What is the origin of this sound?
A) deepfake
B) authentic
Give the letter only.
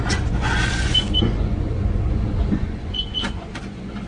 A